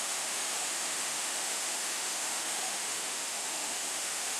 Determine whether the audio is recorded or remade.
remade